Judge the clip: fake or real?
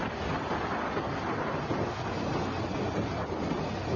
real